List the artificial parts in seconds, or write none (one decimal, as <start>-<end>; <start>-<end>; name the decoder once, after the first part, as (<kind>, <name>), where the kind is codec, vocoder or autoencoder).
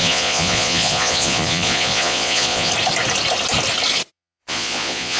0.0-2.7 (vocoder, Vocos); 4.1-5.2